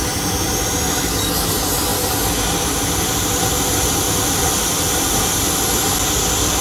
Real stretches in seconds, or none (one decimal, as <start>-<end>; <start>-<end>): 0.0-6.6